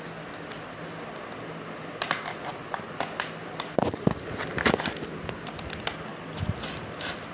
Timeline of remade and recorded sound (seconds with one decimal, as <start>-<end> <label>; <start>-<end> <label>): 0.0-7.3 recorded